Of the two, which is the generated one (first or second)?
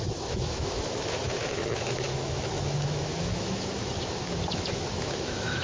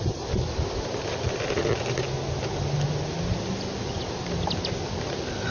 first